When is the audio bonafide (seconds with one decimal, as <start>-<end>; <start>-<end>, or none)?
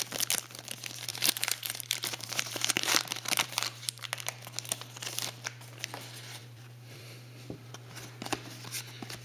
0.0-1.1; 4.1-6.4; 7.7-9.2